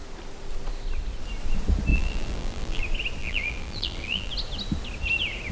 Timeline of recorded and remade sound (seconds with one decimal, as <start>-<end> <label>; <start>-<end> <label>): 0.0-1.9 recorded; 1.9-2.8 remade; 2.8-3.2 recorded; 3.2-4.3 remade; 4.3-5.5 recorded